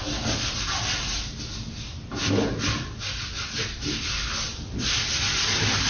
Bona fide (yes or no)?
yes